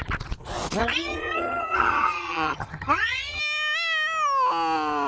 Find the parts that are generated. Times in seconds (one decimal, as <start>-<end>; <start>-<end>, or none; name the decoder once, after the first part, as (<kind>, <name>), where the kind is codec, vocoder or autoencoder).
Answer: 0.8-3.4 (vocoder, HiFi-GAN)